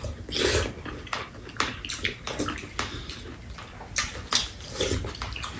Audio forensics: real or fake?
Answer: real